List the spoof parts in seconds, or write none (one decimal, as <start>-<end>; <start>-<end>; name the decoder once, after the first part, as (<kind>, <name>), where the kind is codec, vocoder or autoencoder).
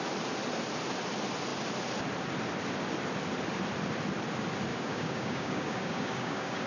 4.7-6.7 (codec, DAC)